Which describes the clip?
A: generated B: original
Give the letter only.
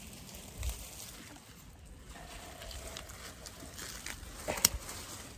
B